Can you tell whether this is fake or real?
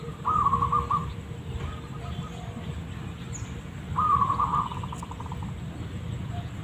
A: real